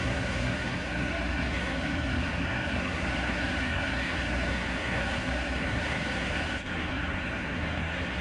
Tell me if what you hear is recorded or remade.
remade